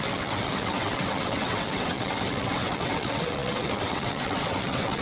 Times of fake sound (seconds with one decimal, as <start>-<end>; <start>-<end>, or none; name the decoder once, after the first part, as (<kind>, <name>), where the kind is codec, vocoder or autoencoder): 0.0-5.0 (vocoder, WaveNeXt)